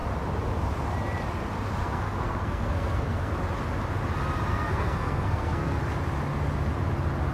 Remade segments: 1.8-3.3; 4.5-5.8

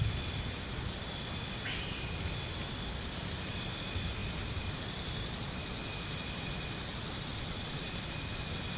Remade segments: none

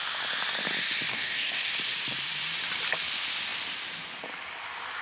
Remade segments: 1.1-1.7

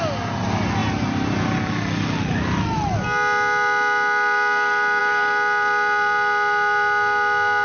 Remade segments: none